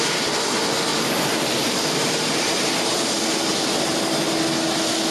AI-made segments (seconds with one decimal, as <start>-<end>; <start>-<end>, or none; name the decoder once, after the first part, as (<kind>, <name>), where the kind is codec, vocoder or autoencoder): 0.9-3.2 (vocoder, BigVGAN v2)